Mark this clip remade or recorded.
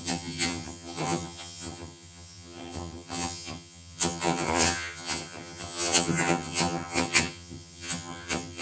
remade